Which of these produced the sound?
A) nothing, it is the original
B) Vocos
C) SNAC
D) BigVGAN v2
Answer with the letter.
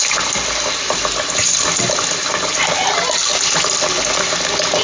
A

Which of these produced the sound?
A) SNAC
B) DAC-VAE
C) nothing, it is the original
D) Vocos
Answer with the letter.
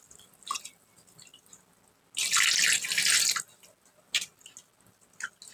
C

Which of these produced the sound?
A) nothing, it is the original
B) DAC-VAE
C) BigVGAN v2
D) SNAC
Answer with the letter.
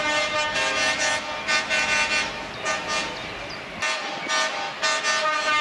A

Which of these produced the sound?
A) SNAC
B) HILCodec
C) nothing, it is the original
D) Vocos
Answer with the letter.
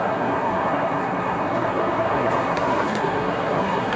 A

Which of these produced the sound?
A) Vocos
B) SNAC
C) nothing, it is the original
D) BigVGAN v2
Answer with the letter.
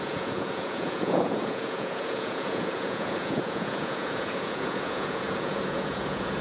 A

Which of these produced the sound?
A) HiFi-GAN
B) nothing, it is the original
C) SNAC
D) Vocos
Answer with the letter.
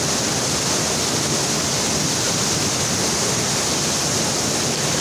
B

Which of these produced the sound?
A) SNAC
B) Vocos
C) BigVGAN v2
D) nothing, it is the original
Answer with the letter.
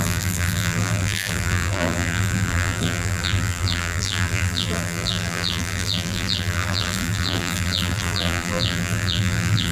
C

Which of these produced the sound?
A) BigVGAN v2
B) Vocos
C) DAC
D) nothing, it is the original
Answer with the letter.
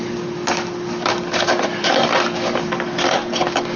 C